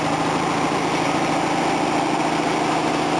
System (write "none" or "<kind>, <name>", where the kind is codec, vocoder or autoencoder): none